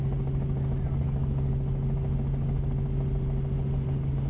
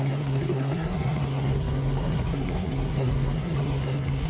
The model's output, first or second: second